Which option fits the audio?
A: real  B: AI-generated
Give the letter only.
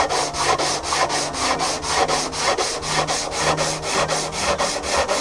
A